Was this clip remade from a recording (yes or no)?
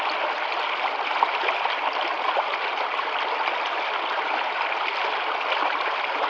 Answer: no